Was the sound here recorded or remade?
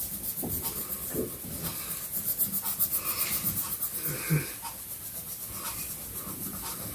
recorded